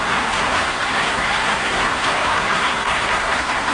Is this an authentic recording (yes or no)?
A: no